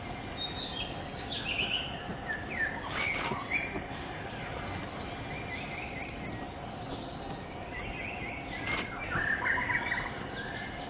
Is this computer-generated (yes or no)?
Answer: no